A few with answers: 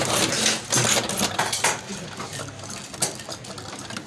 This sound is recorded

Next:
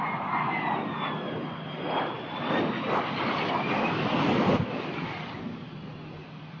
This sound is recorded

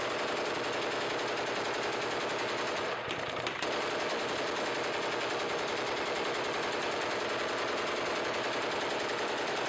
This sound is recorded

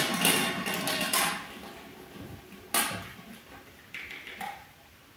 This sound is recorded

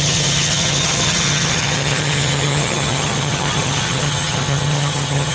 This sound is remade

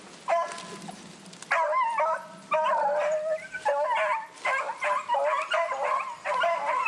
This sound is recorded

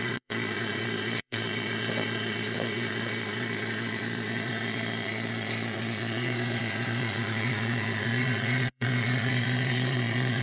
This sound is remade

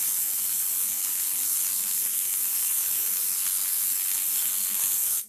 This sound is remade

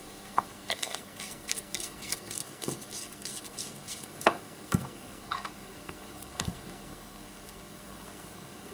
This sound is remade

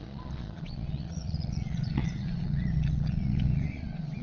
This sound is remade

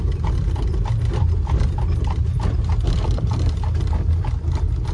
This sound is recorded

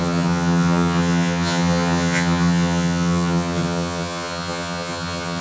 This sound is remade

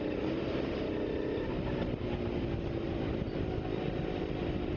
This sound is recorded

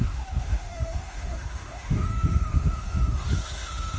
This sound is remade